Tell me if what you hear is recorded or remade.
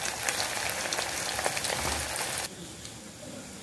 recorded